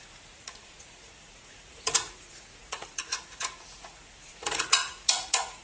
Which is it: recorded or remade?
remade